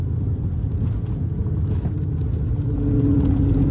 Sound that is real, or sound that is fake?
real